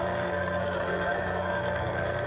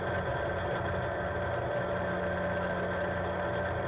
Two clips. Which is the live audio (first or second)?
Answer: second